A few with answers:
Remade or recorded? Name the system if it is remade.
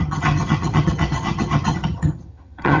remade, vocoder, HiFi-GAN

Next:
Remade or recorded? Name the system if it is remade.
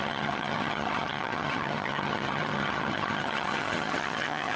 remade, vocoder, HiFi-GAN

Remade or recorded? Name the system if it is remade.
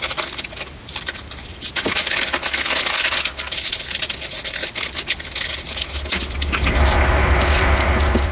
recorded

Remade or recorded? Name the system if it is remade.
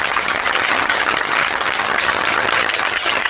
remade, vocoder, HiFi-GAN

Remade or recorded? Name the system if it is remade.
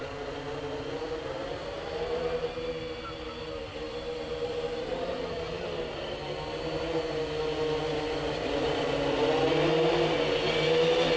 recorded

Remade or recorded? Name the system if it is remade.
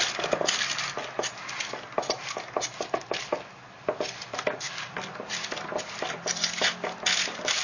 recorded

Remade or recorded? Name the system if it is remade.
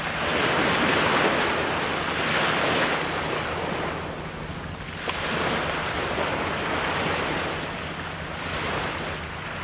recorded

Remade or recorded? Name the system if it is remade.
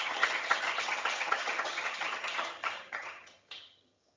remade, vocoder, HiFi-GAN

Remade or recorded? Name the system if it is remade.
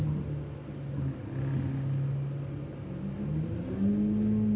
recorded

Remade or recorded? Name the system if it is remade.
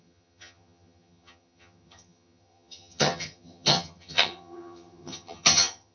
remade, vocoder, HiFi-GAN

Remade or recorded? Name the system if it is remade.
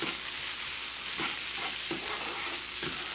recorded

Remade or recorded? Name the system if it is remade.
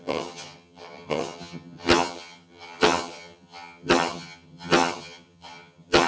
remade, vocoder, HiFi-GAN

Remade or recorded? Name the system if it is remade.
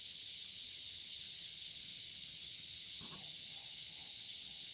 remade, vocoder, HiFi-GAN